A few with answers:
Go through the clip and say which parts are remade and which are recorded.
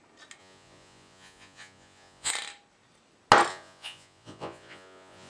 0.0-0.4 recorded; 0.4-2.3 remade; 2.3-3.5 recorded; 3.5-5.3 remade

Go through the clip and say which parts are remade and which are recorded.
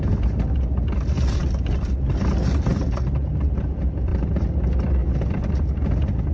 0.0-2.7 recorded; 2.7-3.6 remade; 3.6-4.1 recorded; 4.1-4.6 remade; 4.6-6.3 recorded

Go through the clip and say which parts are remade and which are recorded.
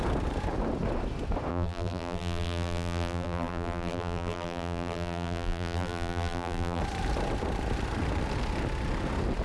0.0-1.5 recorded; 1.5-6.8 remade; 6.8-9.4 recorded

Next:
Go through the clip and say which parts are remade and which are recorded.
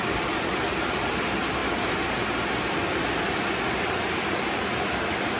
0.0-5.4 recorded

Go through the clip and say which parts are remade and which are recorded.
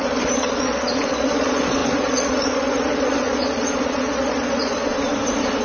0.0-4.9 remade; 4.9-5.6 recorded